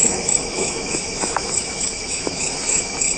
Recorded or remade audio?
remade